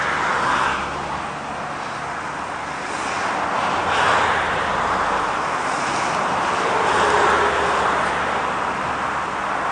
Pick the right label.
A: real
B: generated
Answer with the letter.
A